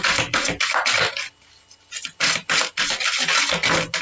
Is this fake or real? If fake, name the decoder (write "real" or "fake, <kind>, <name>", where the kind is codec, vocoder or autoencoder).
real